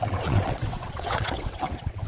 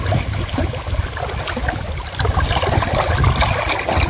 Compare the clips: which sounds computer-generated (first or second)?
first